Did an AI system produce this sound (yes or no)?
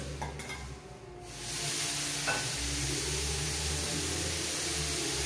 no